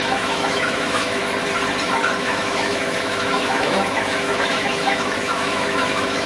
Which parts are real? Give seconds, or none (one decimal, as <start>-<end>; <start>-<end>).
1.2-2.2